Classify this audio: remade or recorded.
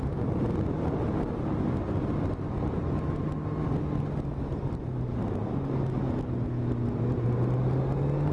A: recorded